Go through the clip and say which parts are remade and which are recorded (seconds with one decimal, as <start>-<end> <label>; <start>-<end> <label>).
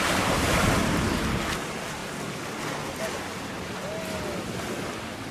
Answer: 0.0-5.3 recorded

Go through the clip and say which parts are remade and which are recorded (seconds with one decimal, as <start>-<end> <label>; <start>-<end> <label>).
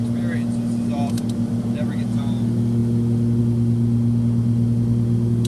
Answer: 0.0-5.5 recorded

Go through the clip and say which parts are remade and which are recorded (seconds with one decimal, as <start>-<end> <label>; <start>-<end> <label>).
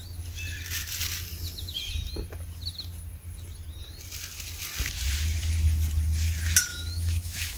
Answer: 0.0-6.7 recorded; 6.7-7.6 remade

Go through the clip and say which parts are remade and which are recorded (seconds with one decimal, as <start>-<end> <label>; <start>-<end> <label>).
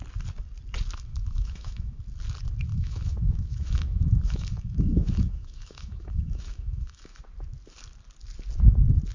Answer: 0.0-1.1 recorded; 1.1-2.0 remade; 2.0-2.7 recorded; 2.7-7.2 remade; 7.2-9.1 recorded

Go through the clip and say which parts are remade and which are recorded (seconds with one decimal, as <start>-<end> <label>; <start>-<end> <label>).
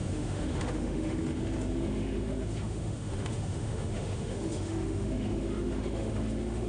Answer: 0.0-6.7 remade